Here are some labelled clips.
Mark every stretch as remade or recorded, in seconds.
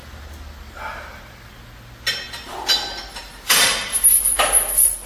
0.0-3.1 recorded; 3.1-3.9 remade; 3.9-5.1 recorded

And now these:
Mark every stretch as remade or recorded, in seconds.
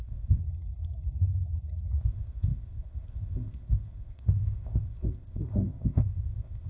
0.0-0.4 remade; 0.4-2.0 recorded; 2.0-6.7 remade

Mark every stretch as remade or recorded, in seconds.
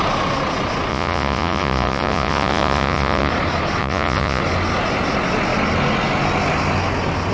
0.0-0.9 recorded; 0.9-3.3 remade; 3.3-3.8 recorded; 3.8-4.4 remade; 4.4-7.3 recorded